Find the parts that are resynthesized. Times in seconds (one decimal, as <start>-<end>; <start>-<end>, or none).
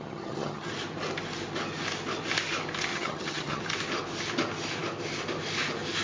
0.0-0.7; 2.9-3.6